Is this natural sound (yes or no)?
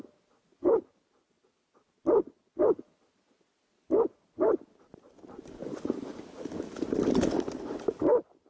yes